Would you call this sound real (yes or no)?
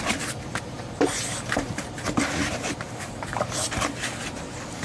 no